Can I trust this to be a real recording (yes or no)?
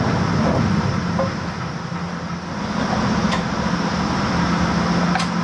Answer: yes